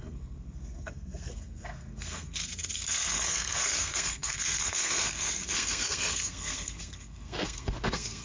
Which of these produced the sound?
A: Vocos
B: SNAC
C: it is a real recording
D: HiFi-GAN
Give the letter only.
B